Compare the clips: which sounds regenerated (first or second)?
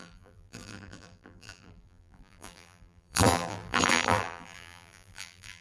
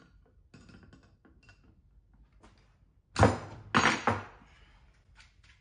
first